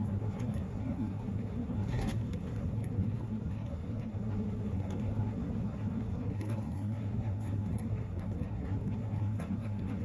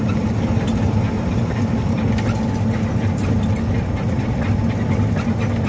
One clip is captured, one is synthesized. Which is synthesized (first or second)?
first